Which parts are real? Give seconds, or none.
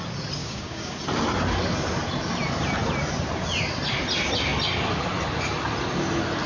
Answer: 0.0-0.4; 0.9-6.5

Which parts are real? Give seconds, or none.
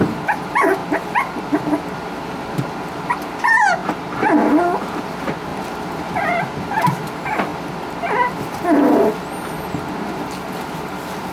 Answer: 0.0-11.3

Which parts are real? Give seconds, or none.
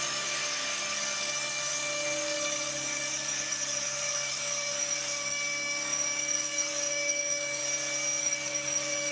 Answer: 7.6-8.2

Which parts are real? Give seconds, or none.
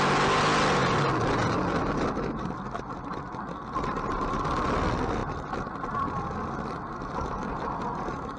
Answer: 0.0-8.4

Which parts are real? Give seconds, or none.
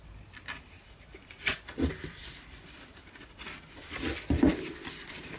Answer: 0.0-5.4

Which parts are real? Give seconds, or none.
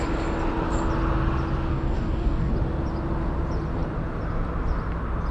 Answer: 0.0-1.7; 2.5-5.3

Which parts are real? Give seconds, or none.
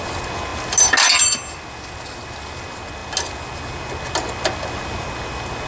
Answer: 0.0-5.7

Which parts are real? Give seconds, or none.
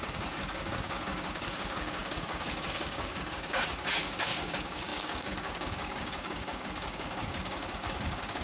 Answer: none